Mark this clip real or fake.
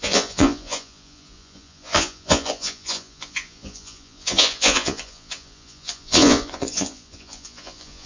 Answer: fake